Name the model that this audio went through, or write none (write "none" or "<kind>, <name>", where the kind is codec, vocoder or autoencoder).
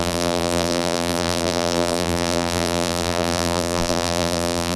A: vocoder, BigVGAN v2